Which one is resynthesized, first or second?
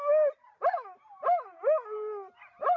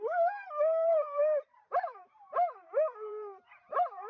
second